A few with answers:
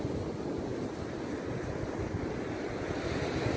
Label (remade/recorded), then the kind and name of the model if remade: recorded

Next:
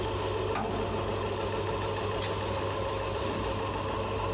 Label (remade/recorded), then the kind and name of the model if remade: recorded